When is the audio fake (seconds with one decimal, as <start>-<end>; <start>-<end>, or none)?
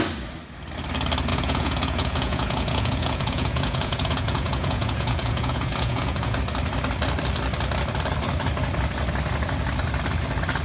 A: 1.3-6.4